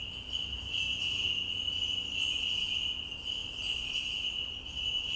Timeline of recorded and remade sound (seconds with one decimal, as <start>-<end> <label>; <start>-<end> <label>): 0.0-5.2 recorded